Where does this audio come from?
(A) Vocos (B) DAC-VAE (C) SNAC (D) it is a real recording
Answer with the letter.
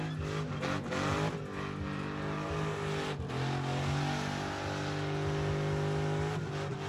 D